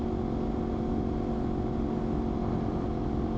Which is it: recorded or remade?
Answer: recorded